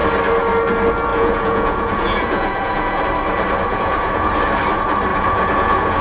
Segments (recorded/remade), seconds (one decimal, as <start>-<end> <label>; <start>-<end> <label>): 0.0-1.1 recorded; 1.1-3.0 remade; 3.0-3.7 recorded; 3.7-4.3 remade; 4.3-5.1 recorded; 5.1-6.0 remade